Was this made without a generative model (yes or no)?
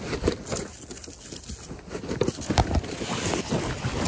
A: yes